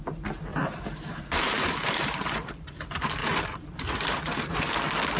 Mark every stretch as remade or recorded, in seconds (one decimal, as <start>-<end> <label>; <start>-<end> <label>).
0.0-0.5 recorded; 0.5-2.5 remade; 2.5-3.2 recorded; 3.2-4.7 remade; 4.7-5.2 recorded